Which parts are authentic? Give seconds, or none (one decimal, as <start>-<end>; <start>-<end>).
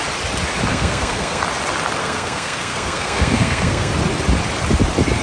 0.0-0.7; 1.4-2.0; 3.9-5.2